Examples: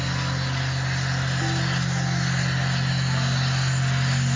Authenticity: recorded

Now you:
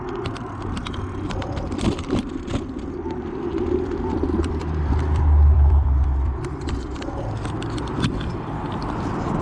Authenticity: remade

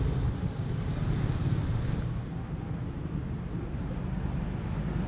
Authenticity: recorded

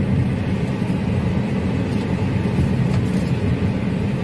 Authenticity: recorded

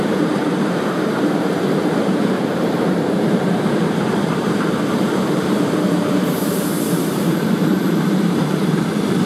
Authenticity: remade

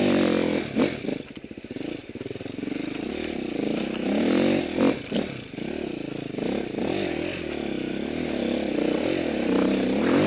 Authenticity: recorded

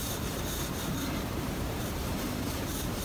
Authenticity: remade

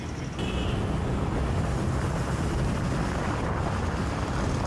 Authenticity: recorded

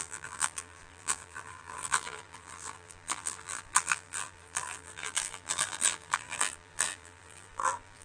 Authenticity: remade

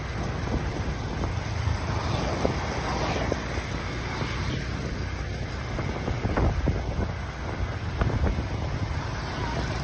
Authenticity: recorded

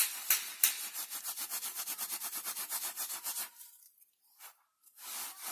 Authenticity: remade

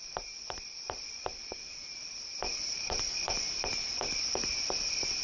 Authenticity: remade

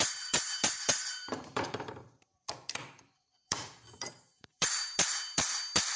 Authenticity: remade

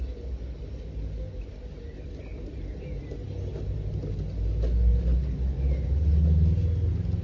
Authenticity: recorded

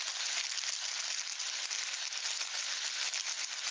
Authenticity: recorded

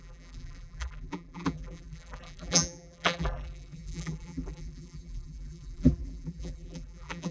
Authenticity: remade